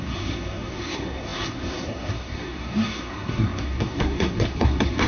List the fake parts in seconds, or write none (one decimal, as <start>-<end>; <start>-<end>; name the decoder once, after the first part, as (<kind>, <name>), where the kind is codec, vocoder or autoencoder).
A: 0.0-5.1 (codec, SNAC)